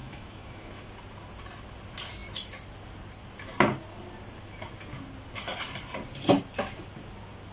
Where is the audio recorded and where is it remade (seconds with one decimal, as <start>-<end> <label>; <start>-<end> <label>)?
0.0-0.9 remade; 0.9-7.5 recorded